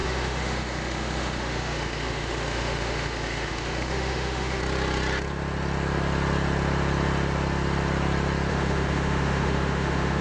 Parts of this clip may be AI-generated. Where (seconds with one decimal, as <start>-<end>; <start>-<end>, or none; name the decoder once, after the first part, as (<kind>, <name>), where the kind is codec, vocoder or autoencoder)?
0.0-4.6 (autoencoder, DAC-VAE); 8.5-10.2